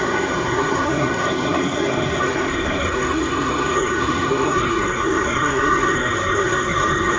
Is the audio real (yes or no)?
no